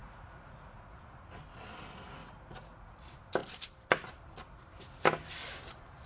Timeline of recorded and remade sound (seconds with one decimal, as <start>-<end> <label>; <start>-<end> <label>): 0.0-1.0 remade; 1.0-2.2 recorded; 2.2-2.9 remade; 2.9-6.1 recorded